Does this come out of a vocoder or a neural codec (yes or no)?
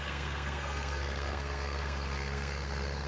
yes